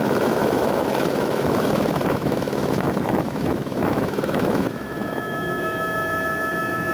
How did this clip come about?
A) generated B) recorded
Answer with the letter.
A